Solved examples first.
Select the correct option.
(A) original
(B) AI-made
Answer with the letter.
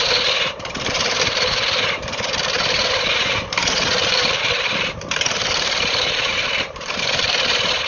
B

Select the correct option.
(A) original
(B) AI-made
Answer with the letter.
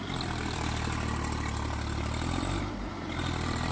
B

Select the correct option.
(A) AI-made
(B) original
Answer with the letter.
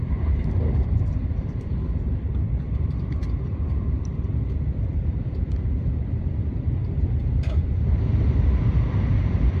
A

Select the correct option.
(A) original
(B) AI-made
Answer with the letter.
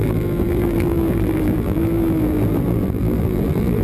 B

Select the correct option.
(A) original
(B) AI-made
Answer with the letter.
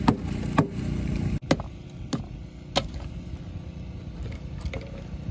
A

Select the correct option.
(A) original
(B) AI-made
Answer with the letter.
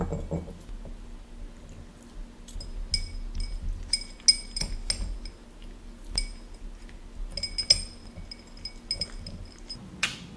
A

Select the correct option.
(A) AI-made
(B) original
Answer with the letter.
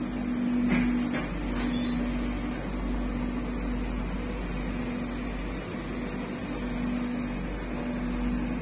B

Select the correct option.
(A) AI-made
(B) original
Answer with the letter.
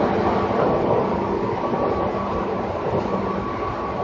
B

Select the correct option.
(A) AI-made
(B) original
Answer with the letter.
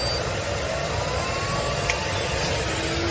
B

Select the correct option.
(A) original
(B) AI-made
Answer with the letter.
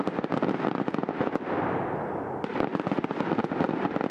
B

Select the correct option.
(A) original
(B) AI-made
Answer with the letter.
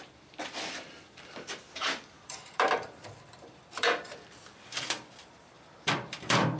B